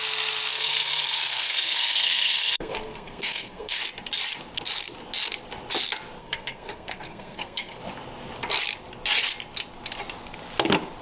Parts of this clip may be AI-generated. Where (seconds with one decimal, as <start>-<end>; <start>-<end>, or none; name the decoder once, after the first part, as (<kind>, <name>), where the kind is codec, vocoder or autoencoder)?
0.5-3.8 (codec, SNAC); 6.2-7.8